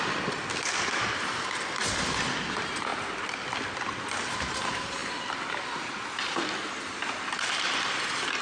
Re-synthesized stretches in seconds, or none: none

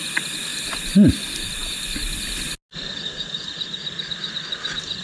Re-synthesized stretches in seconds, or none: none

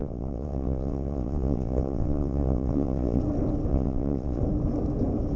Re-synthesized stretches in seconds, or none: 0.0-3.2 (vocoder, WaveNeXt); 3.7-4.4